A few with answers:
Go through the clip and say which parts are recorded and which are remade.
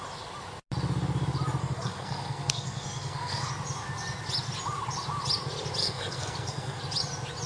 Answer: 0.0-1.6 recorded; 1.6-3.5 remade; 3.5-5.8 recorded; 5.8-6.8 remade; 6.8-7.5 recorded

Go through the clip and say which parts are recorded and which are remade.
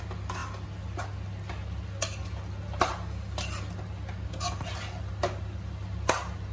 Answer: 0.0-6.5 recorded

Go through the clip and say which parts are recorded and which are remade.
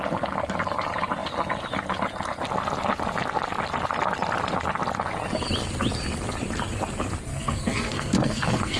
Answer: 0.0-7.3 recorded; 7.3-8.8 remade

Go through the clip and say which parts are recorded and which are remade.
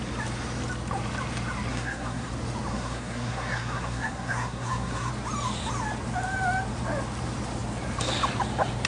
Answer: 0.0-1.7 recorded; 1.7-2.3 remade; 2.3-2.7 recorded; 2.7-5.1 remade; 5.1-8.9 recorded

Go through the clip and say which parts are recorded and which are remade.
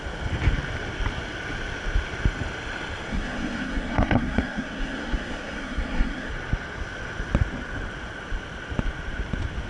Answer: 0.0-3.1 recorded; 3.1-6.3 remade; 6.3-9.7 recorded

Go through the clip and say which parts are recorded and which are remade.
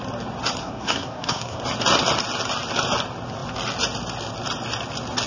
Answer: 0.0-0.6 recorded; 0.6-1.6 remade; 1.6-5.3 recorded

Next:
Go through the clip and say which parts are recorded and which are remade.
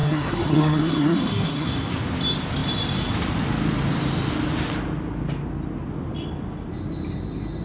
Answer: 0.0-1.7 remade; 1.7-7.6 recorded